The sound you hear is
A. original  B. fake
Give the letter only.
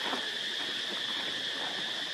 B